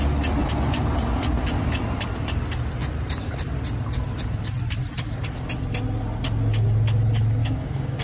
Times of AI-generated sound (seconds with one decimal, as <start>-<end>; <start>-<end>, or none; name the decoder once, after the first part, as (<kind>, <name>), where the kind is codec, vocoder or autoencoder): 7.4-8.0 (codec, DAC)